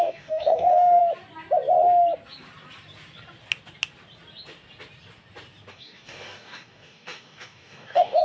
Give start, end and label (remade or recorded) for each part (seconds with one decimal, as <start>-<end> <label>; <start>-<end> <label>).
0.0-1.0 remade; 1.0-5.7 recorded; 5.7-8.2 remade